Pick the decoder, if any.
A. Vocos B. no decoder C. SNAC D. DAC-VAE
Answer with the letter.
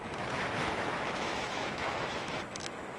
D